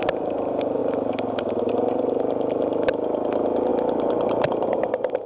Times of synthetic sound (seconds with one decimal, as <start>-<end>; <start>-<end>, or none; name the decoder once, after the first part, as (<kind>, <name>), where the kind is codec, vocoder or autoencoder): none